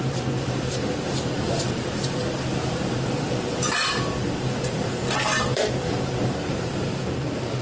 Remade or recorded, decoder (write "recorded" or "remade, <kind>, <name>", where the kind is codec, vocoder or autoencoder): remade, vocoder, BigVGAN v2